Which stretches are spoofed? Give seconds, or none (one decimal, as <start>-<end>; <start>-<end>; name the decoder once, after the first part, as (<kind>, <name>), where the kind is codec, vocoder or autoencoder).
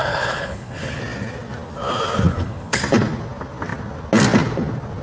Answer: 0.0-1.0 (codec, HILCodec); 2.3-2.8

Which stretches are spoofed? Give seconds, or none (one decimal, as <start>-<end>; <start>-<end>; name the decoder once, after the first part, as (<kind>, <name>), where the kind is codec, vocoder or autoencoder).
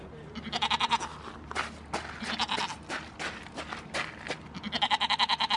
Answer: none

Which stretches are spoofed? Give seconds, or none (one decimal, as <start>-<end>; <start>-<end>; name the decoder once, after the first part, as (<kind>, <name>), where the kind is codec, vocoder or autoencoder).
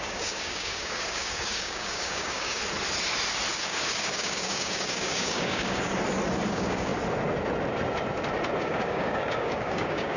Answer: 0.0-2.6 (codec, DAC); 3.5-5.9; 6.5-6.9; 8.6-10.2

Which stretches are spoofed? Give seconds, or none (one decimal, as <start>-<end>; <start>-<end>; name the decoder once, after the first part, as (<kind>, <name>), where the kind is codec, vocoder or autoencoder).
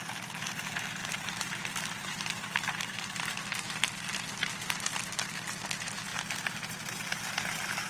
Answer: 1.0-3.8 (vocoder, BigVGAN v2)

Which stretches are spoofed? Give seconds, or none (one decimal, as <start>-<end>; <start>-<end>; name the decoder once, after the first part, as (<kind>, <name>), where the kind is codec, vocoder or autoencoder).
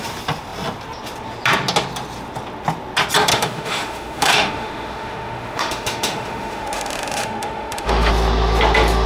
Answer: 3.3-8.1 (autoencoder, DAC-VAE)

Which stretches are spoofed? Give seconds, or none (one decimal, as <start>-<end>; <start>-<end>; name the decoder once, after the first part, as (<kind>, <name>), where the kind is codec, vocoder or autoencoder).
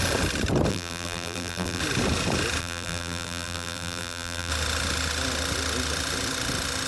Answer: 0.7-1.8 (vocoder, BigVGAN v2); 2.6-4.5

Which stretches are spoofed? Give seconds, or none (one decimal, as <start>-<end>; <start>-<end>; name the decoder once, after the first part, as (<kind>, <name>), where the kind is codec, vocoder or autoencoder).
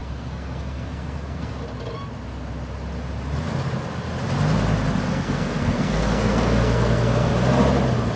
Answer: 0.0-1.5 (codec, SNAC); 5.1-7.3